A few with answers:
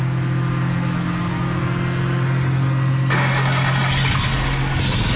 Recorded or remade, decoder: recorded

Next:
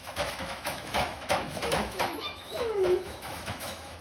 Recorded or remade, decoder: remade, autoencoder, DAC-VAE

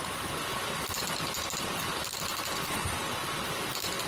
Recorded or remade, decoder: recorded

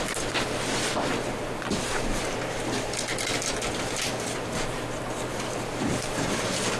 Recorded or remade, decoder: recorded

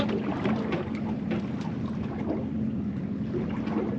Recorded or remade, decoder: recorded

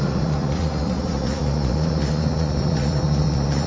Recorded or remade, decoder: remade, vocoder, Vocos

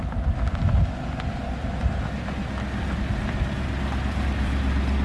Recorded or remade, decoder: recorded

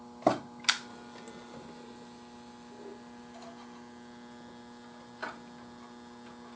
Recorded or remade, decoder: recorded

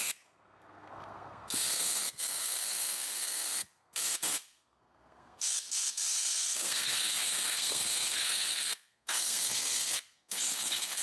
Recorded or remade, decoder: remade, codec, SNAC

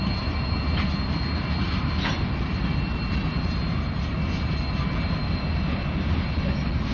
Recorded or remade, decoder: recorded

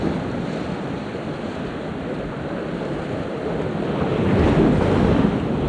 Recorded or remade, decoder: recorded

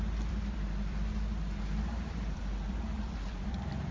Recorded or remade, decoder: remade, vocoder, BigVGAN v2